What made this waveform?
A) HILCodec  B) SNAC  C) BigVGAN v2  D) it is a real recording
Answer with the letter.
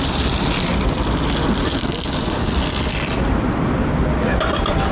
D